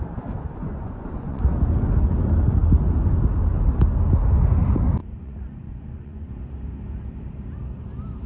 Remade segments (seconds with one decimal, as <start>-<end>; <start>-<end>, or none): 0.6-1.4; 5.0-6.3